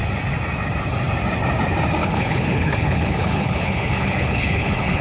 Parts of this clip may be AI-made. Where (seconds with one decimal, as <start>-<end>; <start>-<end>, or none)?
2.0-5.0